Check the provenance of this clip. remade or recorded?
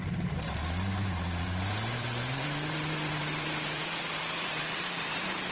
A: remade